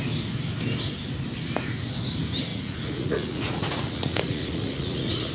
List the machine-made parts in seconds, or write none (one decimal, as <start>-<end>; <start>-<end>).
2.5-5.3